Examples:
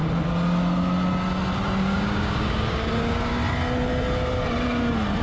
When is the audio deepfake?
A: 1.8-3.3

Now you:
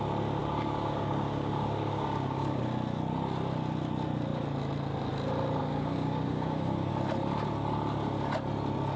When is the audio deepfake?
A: 0.4-2.6; 5.6-6.9

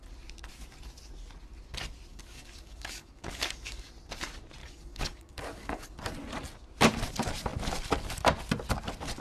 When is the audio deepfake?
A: 2.1-3.9; 4.6-5.9